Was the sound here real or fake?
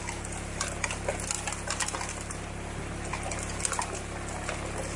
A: real